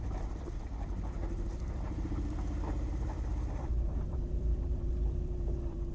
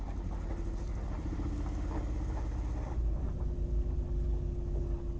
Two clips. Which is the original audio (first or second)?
second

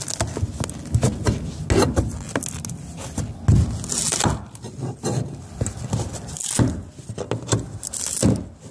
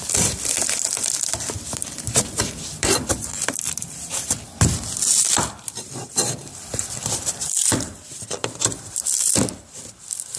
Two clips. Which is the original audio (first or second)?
first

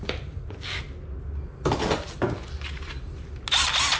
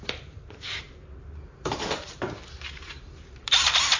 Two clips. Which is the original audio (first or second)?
first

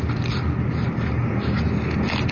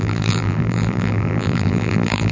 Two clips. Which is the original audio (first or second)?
first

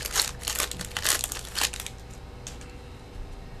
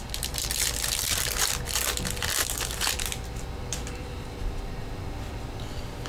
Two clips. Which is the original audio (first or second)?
first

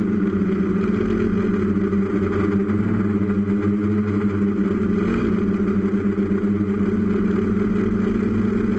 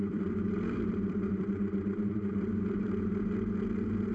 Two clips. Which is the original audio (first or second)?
first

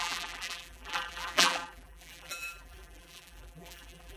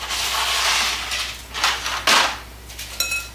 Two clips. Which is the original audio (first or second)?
second